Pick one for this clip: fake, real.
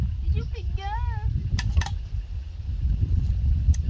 real